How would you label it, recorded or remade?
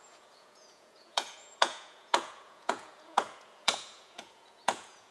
remade